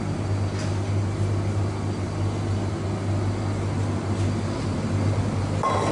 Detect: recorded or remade recorded